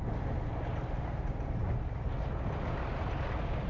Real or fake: real